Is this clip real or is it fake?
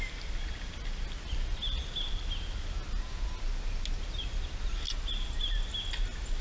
real